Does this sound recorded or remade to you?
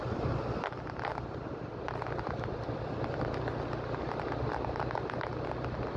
recorded